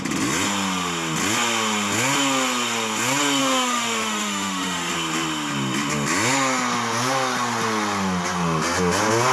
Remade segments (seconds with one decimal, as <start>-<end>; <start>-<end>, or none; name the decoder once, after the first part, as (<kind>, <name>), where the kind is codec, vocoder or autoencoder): 3.4-4.9 (autoencoder, DAC-VAE)